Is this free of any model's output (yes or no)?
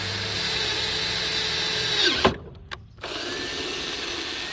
yes